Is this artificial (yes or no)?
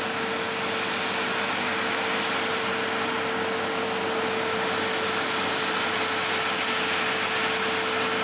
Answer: no